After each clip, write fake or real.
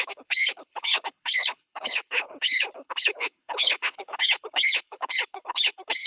fake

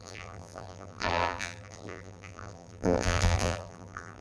fake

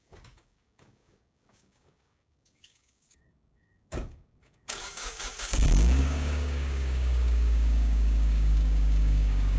fake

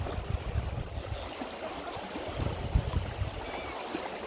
real